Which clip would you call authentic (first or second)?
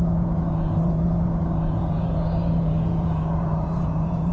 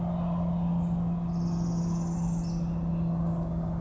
second